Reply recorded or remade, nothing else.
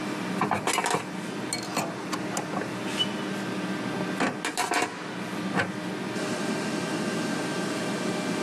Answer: recorded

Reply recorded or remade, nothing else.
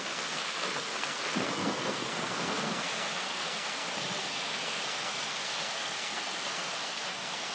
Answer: remade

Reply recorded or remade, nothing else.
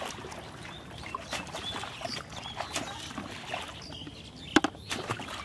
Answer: recorded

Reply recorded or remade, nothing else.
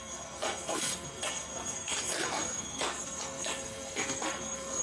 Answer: remade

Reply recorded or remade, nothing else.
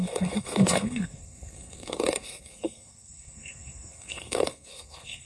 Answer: remade